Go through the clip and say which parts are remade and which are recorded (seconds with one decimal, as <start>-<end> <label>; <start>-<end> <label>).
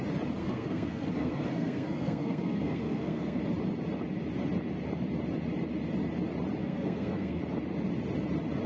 0.0-0.4 recorded; 0.4-3.4 remade; 3.4-6.6 recorded; 6.6-7.4 remade; 7.4-8.7 recorded